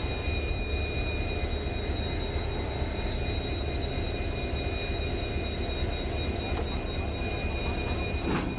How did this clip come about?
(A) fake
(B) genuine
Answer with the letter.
B